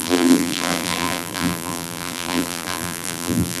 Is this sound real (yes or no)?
no